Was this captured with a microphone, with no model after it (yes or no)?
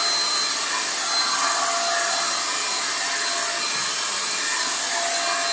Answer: yes